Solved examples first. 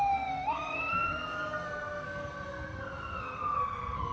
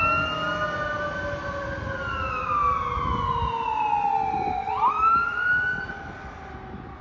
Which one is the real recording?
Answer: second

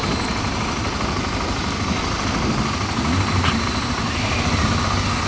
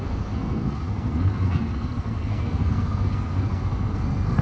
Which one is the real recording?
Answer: first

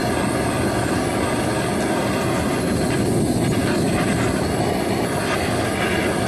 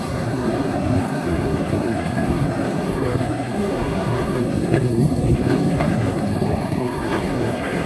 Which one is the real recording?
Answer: first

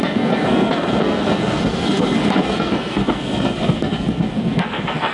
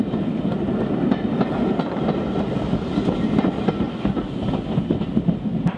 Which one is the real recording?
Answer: second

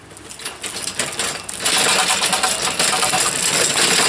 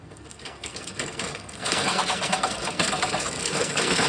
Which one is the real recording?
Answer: first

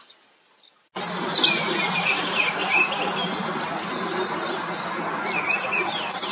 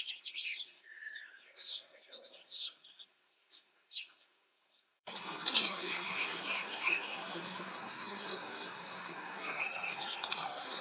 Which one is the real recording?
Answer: first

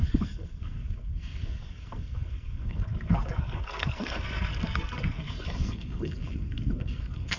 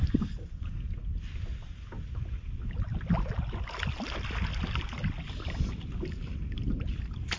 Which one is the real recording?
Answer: second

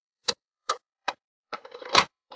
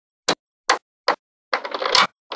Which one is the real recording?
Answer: second